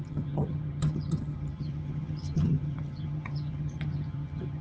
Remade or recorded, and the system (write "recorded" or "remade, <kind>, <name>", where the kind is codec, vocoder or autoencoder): remade, vocoder, HiFi-GAN